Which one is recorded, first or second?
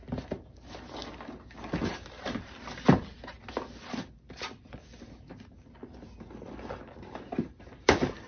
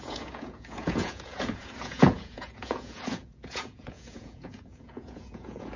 first